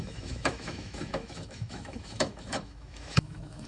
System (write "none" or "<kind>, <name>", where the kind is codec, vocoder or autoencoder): autoencoder, DAC-VAE